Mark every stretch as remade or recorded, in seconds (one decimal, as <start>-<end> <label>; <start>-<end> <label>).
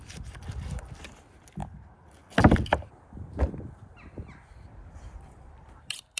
0.0-6.2 recorded